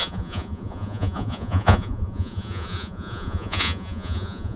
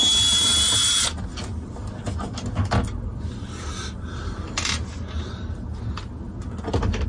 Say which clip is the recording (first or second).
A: second